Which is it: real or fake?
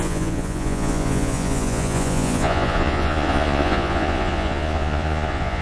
fake